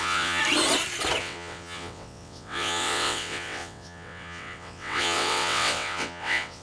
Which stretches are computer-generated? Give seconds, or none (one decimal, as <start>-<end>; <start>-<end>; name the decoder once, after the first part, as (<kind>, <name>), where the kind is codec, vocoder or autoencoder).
0.0-0.4 (vocoder, WaveNeXt); 1.2-6.6